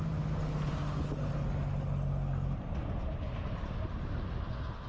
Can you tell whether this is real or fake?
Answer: real